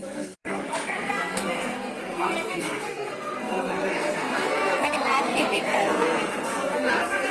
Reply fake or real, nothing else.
fake